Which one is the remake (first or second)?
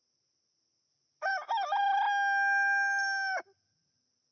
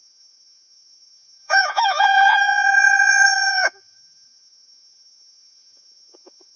second